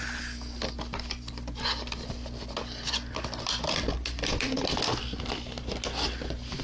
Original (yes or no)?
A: yes